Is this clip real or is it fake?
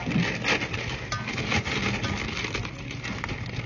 real